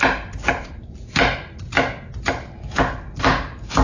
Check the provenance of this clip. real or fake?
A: real